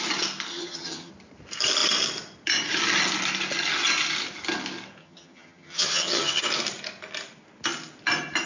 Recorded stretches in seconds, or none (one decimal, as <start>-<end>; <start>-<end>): 0.0-0.5; 1.1-5.0; 6.4-8.5